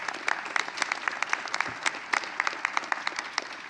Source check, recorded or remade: recorded